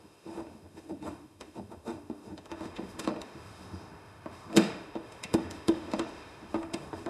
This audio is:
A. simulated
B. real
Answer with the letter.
A